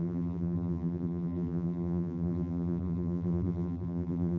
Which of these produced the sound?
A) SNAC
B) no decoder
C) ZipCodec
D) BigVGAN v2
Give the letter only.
D